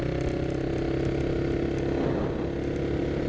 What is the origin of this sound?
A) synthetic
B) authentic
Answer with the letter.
B